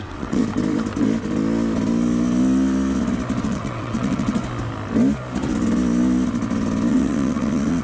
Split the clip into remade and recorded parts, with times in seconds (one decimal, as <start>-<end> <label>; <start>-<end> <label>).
0.0-0.4 remade; 0.4-3.4 recorded; 3.4-4.4 remade; 4.4-6.9 recorded; 6.9-7.8 remade